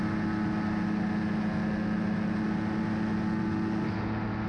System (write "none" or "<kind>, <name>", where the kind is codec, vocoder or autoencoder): none